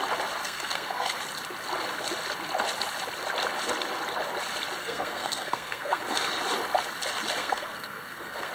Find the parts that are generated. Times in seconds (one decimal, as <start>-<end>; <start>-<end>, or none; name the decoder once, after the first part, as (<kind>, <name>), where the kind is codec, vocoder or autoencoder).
0.4-1.2 (codec, SNAC); 4.8-6.0; 7.4-8.5